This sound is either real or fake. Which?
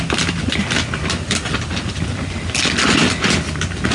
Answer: real